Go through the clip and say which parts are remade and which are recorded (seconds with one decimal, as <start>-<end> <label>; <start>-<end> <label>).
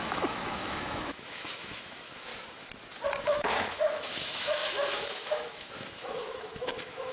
0.0-2.3 remade; 2.3-3.2 recorded; 3.2-7.1 remade